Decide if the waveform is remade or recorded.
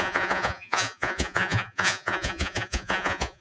remade